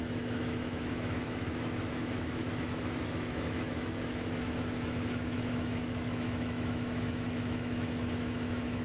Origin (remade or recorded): remade